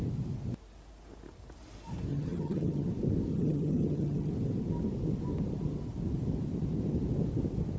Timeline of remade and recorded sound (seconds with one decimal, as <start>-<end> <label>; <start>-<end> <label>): 0.0-2.1 recorded; 2.1-2.9 remade; 2.9-3.3 recorded; 3.3-4.3 remade; 4.3-7.8 recorded